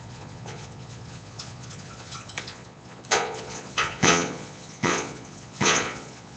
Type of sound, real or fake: fake